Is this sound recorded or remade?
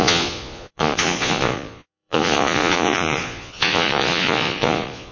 remade